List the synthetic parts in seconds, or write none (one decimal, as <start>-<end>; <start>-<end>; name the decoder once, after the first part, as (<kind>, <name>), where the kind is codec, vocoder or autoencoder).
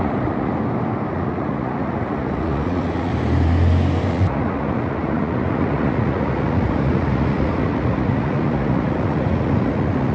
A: 0.0-0.5 (vocoder, Vocos); 1.1-3.1; 4.1-10.1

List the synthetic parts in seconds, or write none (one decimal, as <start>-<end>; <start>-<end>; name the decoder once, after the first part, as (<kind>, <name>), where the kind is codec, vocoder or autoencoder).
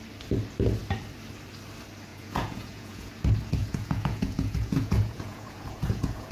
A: 2.1-3.1 (vocoder, Vocos); 3.6-6.3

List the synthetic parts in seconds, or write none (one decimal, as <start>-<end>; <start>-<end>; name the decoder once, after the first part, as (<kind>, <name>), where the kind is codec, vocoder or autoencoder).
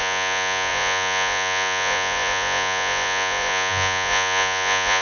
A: 0.0-5.0 (vocoder, Vocos)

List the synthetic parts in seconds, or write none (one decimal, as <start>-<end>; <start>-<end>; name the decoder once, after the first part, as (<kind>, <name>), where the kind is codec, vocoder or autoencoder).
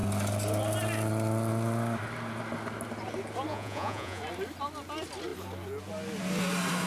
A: 3.5-4.2 (vocoder, Vocos)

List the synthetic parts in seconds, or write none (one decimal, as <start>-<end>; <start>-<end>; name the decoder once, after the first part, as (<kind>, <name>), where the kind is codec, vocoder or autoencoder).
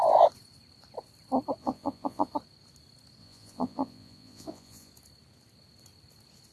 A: 1.6-2.3 (vocoder, Vocos); 3.2-4.9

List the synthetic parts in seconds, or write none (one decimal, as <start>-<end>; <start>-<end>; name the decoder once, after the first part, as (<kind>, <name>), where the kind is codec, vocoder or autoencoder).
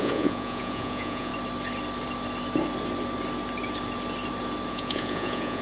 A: 0.0-1.3 (vocoder, Vocos); 4.7-5.6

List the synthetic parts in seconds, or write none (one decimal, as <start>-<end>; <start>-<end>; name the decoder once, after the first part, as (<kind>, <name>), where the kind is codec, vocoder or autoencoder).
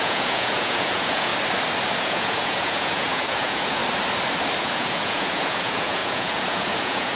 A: 0.0-1.3 (vocoder, Vocos); 2.0-3.8; 4.6-7.2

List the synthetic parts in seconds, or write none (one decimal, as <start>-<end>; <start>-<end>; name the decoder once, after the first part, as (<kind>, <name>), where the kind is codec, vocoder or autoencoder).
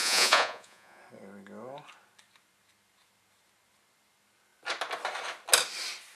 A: 0.0-1.0 (vocoder, Vocos)